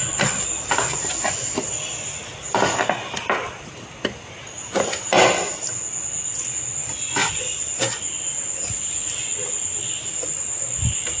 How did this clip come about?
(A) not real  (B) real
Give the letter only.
B